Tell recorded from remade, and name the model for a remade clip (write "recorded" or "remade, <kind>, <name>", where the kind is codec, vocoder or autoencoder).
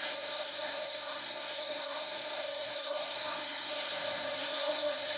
remade, codec, SNAC